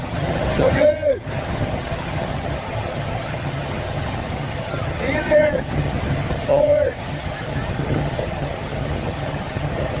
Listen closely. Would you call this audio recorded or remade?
remade